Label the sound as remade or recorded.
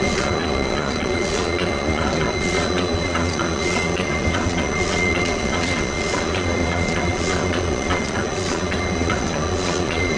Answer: remade